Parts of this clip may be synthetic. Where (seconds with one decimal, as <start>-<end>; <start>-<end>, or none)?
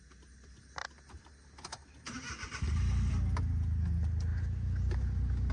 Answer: 1.8-3.1